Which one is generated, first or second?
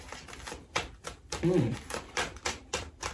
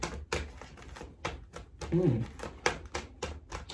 first